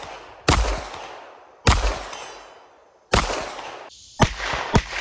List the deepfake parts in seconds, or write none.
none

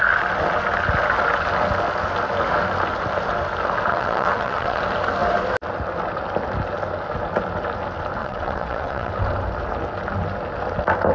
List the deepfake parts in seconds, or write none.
3.9-4.8 (vocoder, WaveNeXt); 8.2-9.1

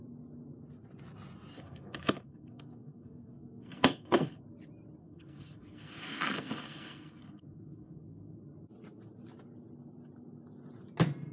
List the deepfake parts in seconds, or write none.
1.5-4.4 (codec, SNAC); 5.0-8.4

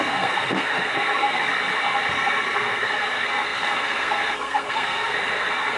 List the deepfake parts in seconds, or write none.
0.0-1.5 (codec, SNAC); 2.1-5.8

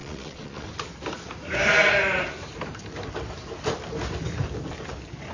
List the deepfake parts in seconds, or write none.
0.0-0.7 (vocoder, WaveNeXt)

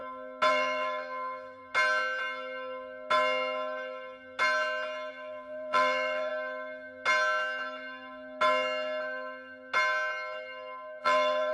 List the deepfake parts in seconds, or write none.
0.5-1.6 (vocoder, BigVGAN v2); 5.1-6.3; 11.0-11.5

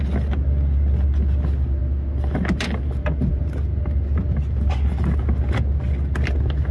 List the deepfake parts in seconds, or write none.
none